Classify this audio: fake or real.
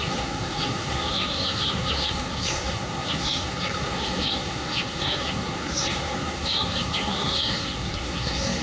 fake